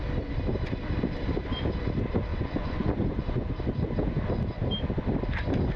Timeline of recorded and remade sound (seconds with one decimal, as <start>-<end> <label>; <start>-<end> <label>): 0.0-2.3 recorded; 2.3-3.5 remade; 3.5-5.8 recorded